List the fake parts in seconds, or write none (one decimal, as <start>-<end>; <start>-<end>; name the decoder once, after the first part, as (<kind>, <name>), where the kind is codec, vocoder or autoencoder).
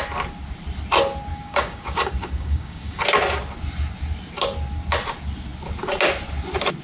1.3-3.0 (codec, DAC)